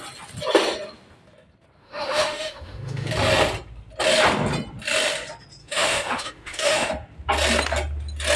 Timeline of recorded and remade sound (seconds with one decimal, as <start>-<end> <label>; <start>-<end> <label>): 0.0-1.8 recorded; 1.8-3.1 remade; 3.1-5.6 recorded; 5.6-6.9 remade; 6.9-8.4 recorded